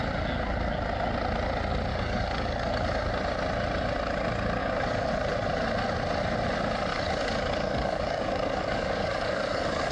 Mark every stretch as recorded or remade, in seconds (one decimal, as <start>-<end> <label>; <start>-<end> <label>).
0.0-1.9 recorded; 1.9-3.1 remade; 3.1-4.6 recorded; 4.6-5.1 remade; 5.1-6.9 recorded; 6.9-9.9 remade